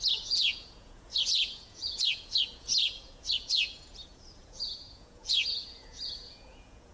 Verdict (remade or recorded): remade